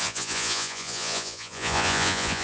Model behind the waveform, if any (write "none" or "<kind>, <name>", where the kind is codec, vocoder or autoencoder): vocoder, Vocos